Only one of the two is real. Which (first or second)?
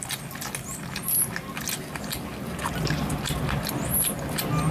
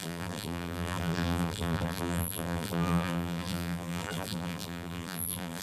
first